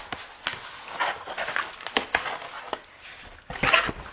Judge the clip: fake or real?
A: real